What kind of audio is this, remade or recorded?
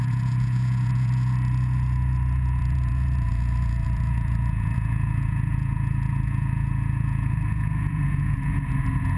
remade